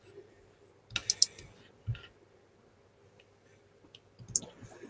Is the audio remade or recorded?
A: recorded